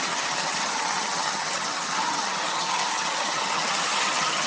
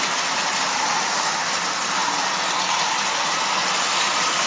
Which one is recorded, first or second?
second